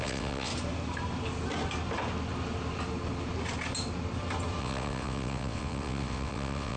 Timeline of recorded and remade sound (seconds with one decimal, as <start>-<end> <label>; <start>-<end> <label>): 0.0-0.5 remade; 0.5-4.6 recorded; 4.6-6.8 remade

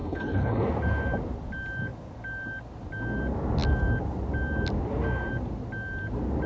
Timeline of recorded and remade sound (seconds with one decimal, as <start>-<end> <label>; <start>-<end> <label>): 0.0-0.7 remade; 0.7-6.5 recorded

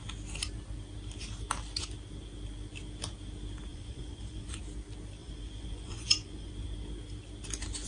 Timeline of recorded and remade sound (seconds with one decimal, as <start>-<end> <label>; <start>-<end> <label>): 0.0-3.7 recorded; 3.7-4.6 remade; 4.6-5.2 recorded; 5.2-6.5 remade; 6.5-7.9 recorded

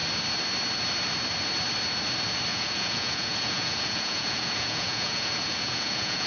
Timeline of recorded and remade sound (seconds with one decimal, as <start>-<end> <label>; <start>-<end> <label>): 0.0-2.5 recorded; 2.5-6.3 remade

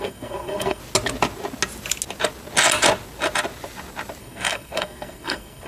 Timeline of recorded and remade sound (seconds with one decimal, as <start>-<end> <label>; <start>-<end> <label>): 0.0-0.8 remade; 0.8-4.2 recorded; 4.2-5.7 remade

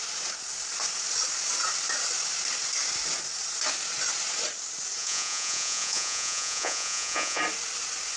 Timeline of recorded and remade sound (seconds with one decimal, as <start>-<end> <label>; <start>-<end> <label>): 0.0-5.0 recorded; 5.0-7.4 remade; 7.4-8.2 recorded

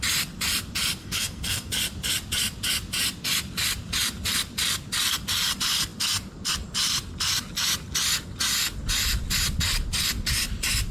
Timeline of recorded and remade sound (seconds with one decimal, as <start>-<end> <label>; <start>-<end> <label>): 0.0-1.0 recorded; 1.0-1.7 remade; 1.7-10.9 recorded

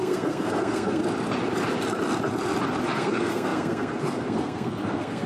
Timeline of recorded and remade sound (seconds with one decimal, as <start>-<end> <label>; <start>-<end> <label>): 0.0-1.0 remade; 1.0-2.9 recorded; 2.9-5.3 remade